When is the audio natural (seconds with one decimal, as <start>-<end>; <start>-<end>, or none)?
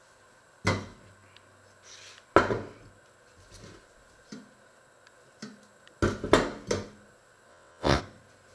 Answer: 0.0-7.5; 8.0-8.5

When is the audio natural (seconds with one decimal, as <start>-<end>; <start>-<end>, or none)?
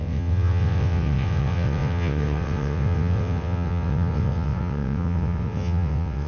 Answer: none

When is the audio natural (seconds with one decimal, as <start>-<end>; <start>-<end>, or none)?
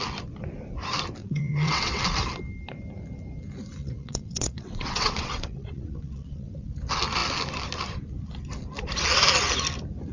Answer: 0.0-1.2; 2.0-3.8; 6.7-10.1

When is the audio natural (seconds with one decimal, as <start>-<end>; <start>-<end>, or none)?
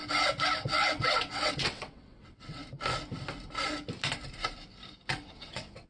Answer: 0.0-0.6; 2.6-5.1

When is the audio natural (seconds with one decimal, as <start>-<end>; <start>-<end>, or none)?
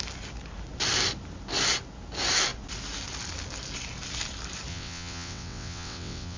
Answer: 0.0-4.7